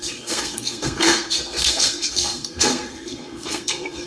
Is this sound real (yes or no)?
no